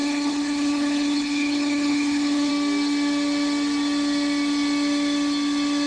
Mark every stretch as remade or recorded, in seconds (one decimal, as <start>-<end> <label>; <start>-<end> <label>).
0.0-2.5 remade; 2.5-5.9 recorded